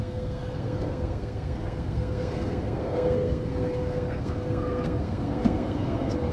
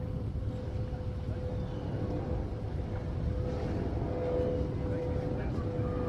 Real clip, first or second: second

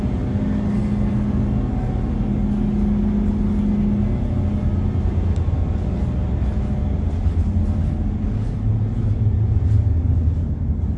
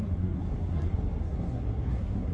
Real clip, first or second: first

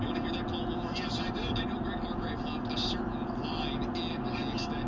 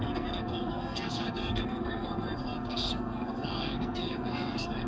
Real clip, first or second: first